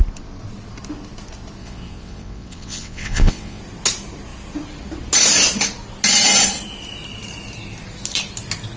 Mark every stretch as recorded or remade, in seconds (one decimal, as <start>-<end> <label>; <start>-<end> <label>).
0.0-1.6 recorded; 1.6-3.6 remade; 3.6-8.8 recorded